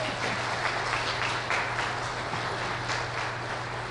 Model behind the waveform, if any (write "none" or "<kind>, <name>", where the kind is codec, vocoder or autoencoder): none